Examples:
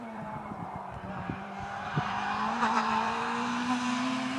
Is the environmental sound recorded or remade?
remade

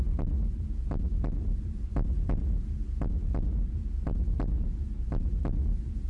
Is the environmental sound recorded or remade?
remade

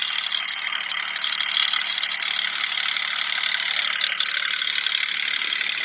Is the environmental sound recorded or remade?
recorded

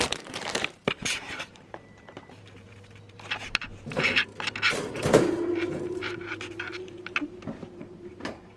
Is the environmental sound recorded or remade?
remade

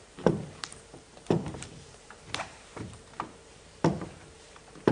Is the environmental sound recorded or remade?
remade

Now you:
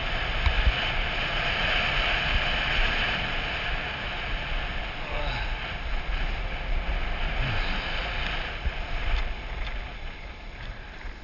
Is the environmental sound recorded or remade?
recorded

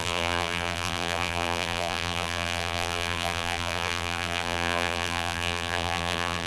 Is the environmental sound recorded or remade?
remade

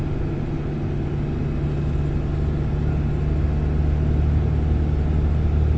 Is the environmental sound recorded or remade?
recorded